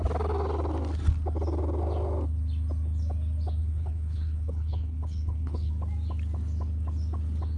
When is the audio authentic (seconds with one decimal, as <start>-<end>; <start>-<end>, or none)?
0.0-3.6; 5.7-7.6